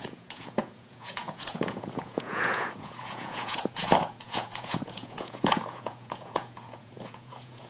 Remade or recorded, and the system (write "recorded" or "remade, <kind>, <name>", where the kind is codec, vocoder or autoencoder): remade, vocoder, Vocos